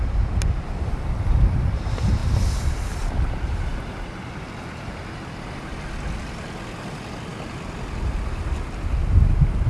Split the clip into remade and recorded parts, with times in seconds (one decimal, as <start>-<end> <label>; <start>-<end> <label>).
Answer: 0.0-9.7 recorded